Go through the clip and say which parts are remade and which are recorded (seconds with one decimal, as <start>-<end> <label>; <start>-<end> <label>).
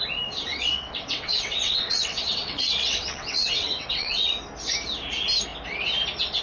0.0-0.5 recorded; 0.5-4.3 remade; 4.3-6.4 recorded